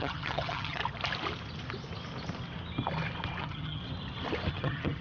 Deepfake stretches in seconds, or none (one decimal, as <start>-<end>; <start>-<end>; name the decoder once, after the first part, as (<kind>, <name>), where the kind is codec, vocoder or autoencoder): 0.0-0.8 (vocoder, HiFi-GAN); 3.4-3.8; 4.5-5.0